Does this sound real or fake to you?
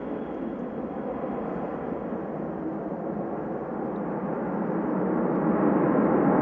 real